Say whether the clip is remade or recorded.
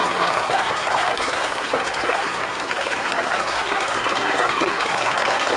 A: remade